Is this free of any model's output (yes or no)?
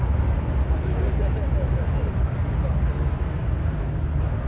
yes